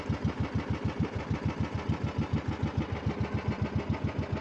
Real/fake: real